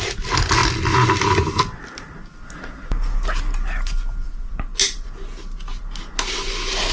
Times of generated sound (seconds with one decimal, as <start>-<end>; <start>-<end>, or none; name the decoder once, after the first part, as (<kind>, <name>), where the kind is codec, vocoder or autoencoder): none